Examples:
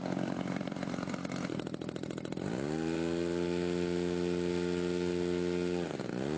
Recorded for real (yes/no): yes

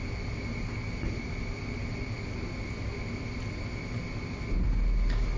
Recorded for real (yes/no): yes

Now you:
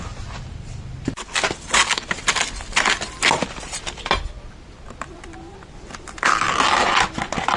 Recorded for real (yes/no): yes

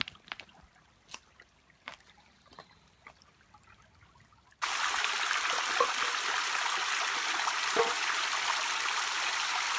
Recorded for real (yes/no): yes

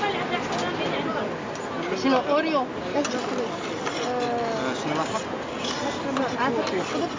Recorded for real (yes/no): yes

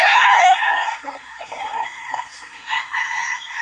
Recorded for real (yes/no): no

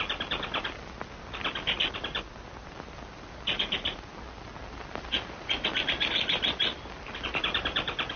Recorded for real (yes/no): yes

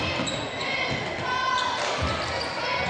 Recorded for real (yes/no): yes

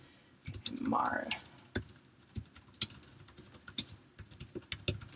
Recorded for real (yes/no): yes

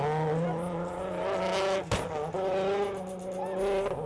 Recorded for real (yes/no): yes